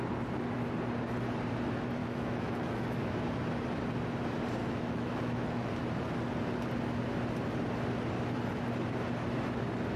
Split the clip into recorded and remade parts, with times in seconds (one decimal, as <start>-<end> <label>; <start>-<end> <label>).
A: 0.0-2.0 recorded; 2.0-3.1 remade; 3.1-4.6 recorded; 4.6-5.7 remade; 5.7-10.0 recorded